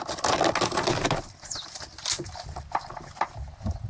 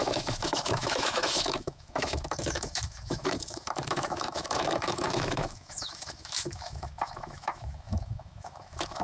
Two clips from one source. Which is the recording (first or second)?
first